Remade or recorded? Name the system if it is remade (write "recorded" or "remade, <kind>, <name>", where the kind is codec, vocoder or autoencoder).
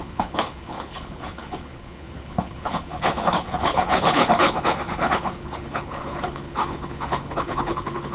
remade, codec, HILCodec